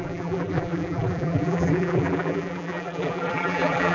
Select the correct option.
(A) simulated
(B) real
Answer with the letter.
A